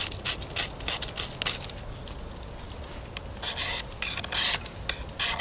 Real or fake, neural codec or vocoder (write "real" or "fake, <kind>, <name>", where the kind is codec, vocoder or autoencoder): real